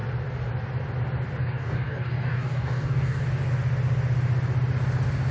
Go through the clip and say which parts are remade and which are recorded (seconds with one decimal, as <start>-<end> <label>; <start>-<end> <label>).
0.0-1.4 recorded; 1.4-3.2 remade; 3.2-5.3 recorded